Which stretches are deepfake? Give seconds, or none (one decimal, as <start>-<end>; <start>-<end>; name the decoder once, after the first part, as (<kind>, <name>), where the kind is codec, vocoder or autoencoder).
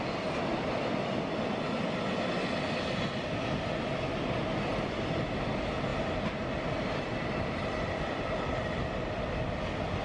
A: none